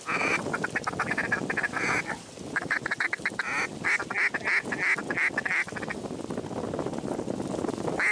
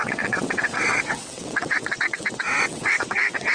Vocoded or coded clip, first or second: second